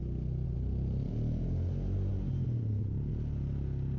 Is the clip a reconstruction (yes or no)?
no